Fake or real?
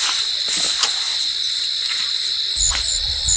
real